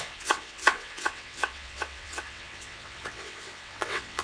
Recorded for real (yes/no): no